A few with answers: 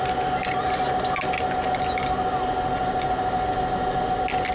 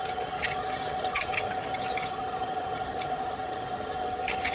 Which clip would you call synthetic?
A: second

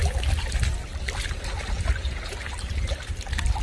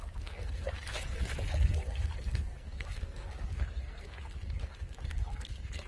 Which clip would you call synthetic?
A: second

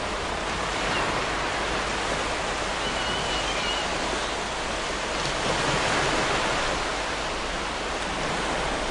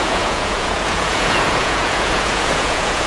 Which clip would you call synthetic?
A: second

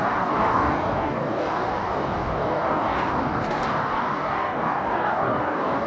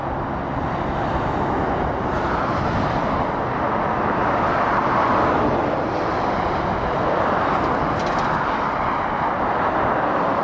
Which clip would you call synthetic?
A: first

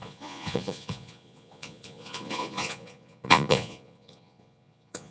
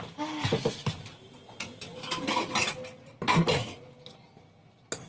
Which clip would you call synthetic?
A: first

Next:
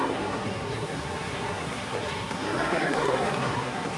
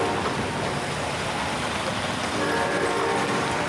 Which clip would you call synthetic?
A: first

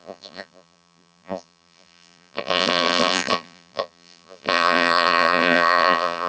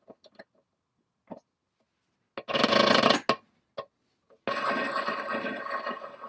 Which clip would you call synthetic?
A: first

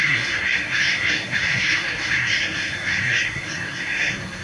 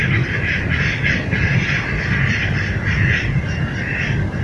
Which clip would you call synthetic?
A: first